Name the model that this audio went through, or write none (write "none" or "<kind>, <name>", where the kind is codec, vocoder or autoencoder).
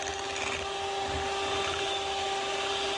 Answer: none